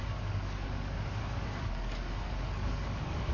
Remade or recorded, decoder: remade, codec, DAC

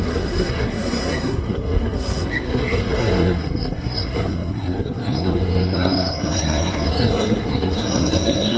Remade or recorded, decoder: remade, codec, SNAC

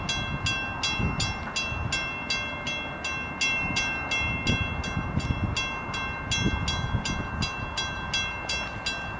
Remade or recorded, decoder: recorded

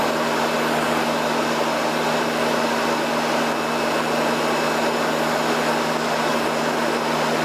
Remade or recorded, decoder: recorded